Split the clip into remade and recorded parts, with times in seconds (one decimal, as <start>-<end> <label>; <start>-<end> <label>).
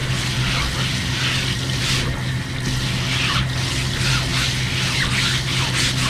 0.0-6.1 recorded